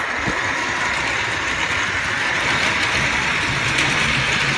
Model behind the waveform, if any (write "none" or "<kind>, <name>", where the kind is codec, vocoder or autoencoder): none